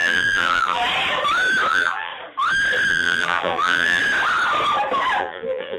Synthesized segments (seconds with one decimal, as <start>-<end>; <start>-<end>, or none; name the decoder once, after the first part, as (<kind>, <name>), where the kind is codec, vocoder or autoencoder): 0.0-0.8 (vocoder, BigVGAN v2); 1.7-2.1; 2.9-4.0; 5.2-5.8